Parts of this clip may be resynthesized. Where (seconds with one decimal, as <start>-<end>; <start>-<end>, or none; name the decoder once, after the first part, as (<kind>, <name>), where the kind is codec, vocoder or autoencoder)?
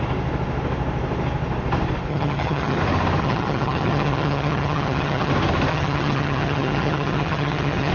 2.1-2.8 (vocoder, HiFi-GAN); 3.2-5.3; 5.7-7.9